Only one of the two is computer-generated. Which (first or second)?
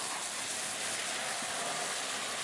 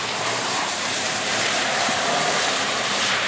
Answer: second